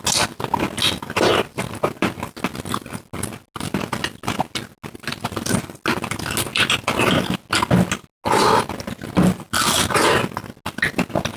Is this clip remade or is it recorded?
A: recorded